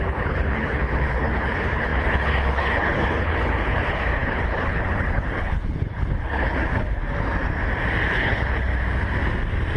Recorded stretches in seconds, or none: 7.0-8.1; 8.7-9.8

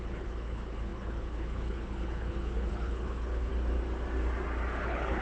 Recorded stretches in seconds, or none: 3.5-4.8

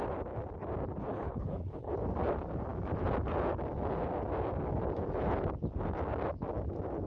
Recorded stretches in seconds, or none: 0.0-1.1; 1.9-7.1

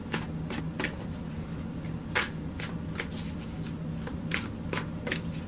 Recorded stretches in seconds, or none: 0.0-5.5